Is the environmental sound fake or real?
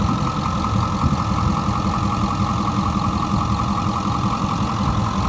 real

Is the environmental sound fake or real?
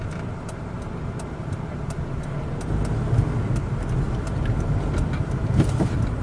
real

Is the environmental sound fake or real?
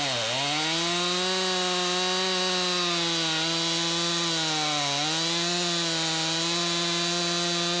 real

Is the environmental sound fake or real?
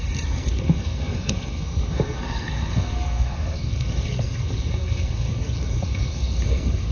fake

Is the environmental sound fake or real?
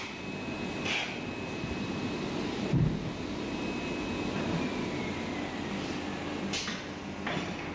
real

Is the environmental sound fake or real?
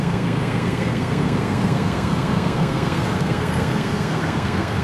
fake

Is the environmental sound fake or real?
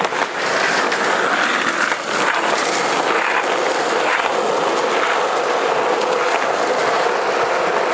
real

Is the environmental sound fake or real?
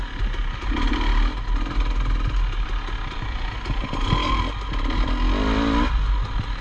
real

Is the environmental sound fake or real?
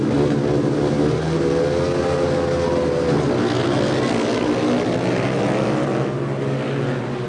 real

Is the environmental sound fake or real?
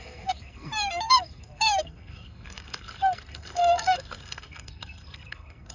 fake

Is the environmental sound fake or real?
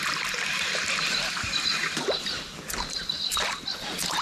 real